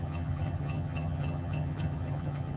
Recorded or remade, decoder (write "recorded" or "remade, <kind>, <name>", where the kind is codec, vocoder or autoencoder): remade, vocoder, HiFi-GAN